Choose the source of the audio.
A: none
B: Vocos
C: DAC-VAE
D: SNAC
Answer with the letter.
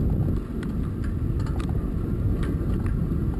A